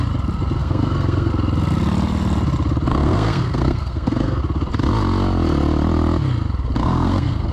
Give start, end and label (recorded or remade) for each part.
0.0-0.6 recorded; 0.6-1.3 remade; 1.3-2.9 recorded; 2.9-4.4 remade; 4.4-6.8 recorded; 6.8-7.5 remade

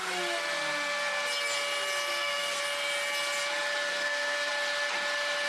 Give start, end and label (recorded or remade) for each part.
0.0-2.1 recorded; 2.1-2.6 remade; 2.6-3.9 recorded; 3.9-4.5 remade; 4.5-5.5 recorded

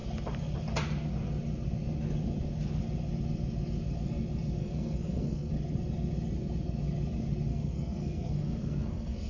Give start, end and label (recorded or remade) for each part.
0.0-4.6 recorded; 4.6-5.5 remade; 5.5-7.5 recorded; 7.5-9.3 remade